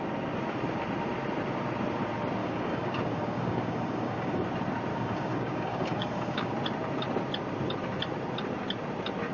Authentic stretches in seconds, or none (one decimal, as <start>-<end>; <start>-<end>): 0.0-2.4; 4.4-4.9; 6.5-9.3